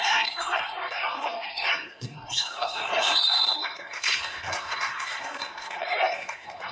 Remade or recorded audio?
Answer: remade